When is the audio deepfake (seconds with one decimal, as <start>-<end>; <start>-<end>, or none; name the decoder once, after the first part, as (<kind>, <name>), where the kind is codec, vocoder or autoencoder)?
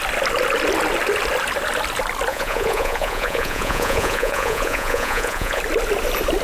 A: 2.3-5.6 (vocoder, Vocos)